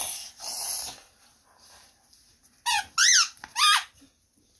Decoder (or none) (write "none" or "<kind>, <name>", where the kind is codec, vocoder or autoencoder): none